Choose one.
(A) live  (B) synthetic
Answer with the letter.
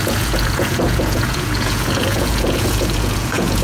B